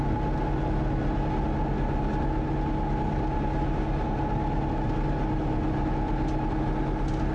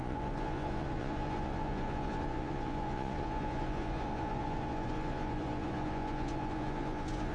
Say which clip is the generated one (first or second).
second